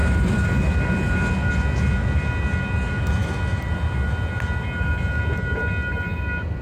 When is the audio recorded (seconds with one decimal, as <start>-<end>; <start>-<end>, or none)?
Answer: 0.0-6.6